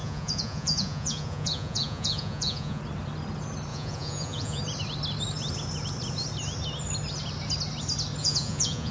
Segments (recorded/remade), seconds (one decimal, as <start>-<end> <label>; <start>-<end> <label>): 0.0-2.8 remade; 2.8-3.7 recorded; 3.7-4.6 remade; 4.6-8.2 recorded; 8.2-8.9 remade